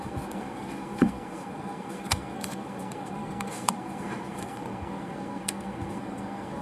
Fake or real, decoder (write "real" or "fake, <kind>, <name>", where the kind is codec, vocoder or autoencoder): fake, codec, SNAC